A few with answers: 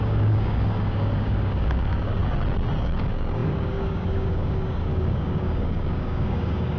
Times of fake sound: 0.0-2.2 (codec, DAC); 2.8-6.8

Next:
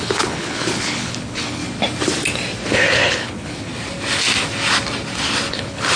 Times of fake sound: 0.0-1.6 (codec, HILCodec); 2.7-3.7; 5.5-6.0

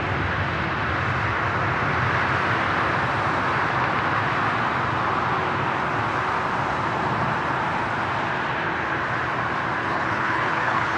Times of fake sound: 9.8-11.0 (codec, HILCodec)

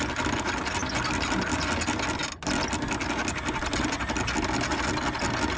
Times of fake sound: none